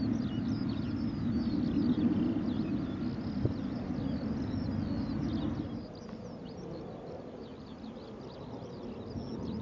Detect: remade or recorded recorded